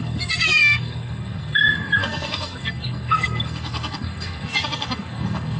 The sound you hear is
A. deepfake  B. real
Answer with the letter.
A